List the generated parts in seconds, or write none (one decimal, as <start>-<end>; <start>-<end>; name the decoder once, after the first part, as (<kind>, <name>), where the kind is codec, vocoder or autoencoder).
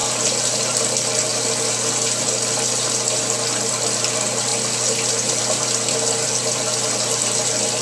none